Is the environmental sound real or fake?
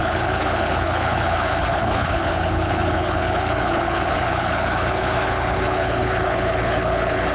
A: fake